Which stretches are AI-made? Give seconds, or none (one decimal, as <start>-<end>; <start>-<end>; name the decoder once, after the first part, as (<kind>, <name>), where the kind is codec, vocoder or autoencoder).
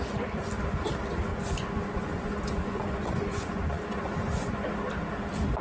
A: 1.3-4.7 (vocoder, Vocos)